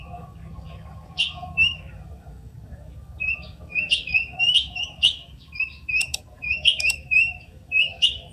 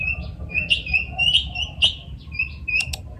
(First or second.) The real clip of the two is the second